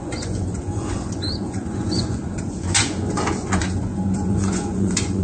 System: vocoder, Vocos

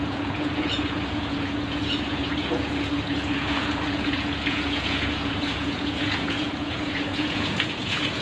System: vocoder, Vocos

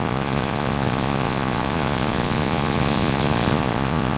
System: vocoder, Vocos